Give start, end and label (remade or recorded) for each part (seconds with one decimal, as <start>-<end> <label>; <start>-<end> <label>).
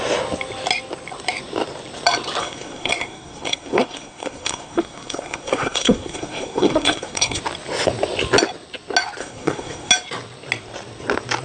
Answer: 0.0-2.4 recorded; 2.4-7.4 remade; 7.4-9.2 recorded; 9.2-9.9 remade; 9.9-11.4 recorded